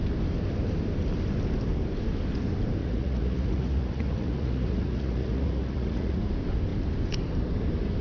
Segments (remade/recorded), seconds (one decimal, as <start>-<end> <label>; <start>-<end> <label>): 0.0-2.8 recorded; 2.8-6.2 remade; 6.2-8.0 recorded